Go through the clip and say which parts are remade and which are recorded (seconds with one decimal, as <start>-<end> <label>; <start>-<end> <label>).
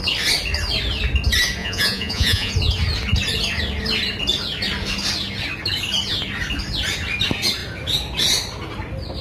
0.0-1.6 recorded; 1.6-2.5 remade; 2.5-9.2 recorded